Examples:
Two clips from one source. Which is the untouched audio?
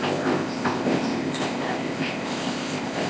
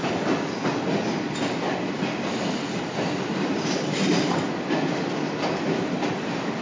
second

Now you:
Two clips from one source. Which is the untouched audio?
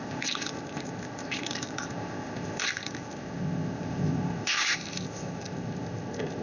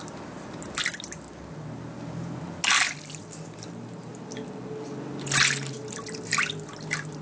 second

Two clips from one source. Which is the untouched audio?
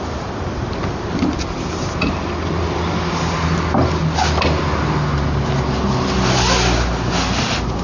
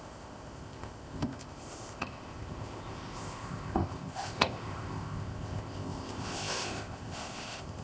first